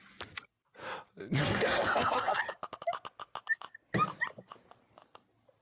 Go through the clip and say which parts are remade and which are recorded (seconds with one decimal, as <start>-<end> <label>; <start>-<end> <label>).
0.0-1.4 recorded; 1.4-2.4 remade; 2.4-5.6 recorded